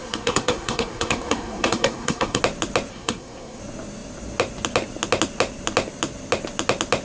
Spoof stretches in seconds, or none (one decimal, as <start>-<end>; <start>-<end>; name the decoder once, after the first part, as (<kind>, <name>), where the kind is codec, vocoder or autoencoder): 0.0-2.4 (codec, SNAC); 2.9-3.6